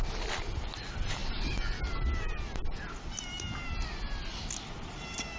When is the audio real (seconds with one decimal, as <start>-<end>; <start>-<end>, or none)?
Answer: 0.0-5.4